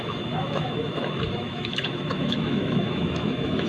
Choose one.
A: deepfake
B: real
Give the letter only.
A